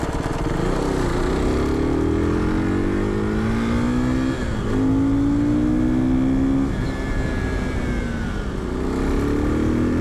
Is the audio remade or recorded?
recorded